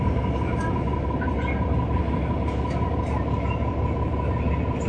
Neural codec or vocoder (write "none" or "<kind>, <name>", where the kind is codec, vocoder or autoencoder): none